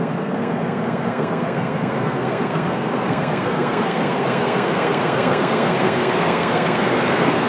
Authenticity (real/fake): fake